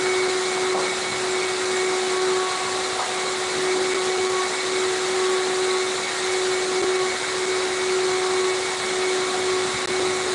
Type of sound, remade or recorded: recorded